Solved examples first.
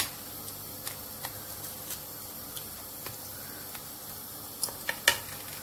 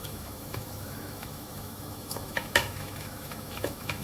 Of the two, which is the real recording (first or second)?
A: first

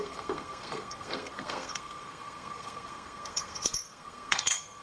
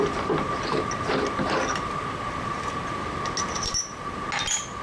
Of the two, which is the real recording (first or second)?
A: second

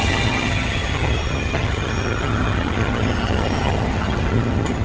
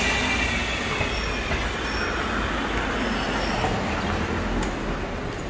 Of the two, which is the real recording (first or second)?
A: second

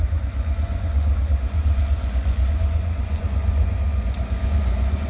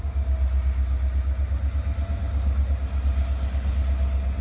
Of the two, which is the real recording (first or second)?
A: second